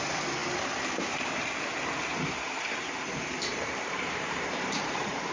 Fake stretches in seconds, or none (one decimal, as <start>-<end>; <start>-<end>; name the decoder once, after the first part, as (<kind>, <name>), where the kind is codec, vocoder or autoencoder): 2.1-5.3 (vocoder, BigVGAN v2)